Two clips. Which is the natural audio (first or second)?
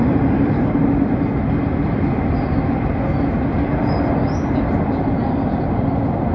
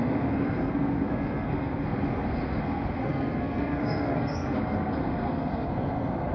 first